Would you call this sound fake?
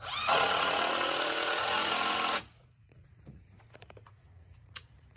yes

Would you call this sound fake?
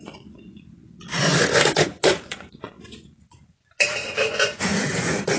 yes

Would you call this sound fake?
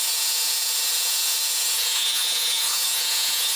yes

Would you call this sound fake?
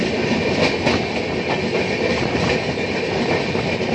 no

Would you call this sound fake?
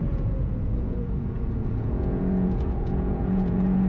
yes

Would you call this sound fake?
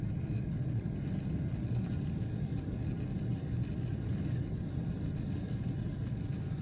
no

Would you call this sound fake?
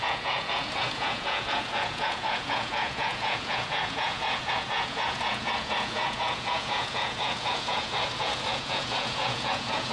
yes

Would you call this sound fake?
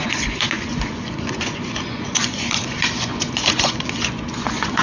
yes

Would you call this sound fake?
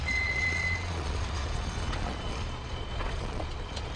yes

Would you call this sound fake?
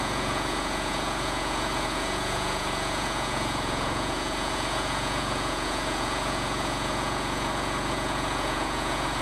yes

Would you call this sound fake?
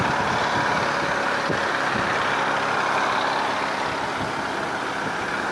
no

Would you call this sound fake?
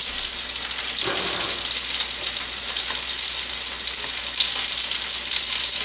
no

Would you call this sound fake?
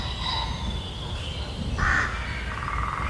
no